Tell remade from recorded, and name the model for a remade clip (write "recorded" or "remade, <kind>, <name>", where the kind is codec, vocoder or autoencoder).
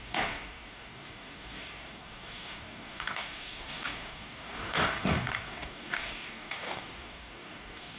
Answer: remade, codec, DAC